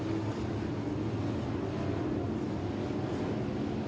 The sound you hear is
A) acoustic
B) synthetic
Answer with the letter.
A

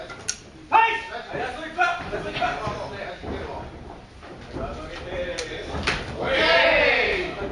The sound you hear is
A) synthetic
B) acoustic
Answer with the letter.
B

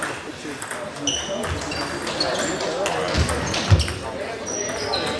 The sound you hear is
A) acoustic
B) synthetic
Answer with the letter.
A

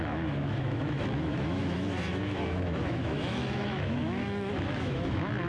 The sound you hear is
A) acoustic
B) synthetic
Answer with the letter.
B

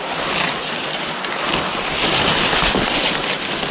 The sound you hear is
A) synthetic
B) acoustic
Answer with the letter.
B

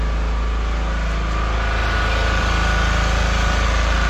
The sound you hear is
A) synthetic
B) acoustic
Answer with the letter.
B